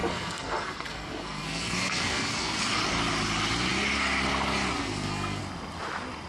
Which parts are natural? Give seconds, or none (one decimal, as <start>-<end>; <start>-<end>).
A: 2.6-4.8; 5.4-6.3